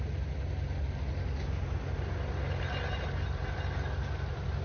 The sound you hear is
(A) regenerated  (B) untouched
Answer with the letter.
B